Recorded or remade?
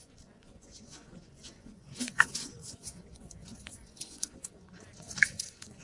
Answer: remade